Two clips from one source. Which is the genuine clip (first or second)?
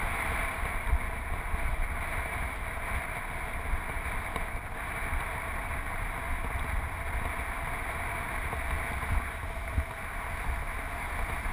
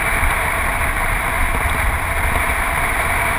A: first